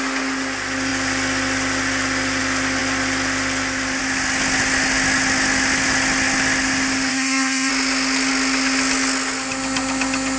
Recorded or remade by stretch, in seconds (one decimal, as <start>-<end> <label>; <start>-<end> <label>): 0.0-7.1 recorded; 7.1-7.7 remade; 7.7-10.4 recorded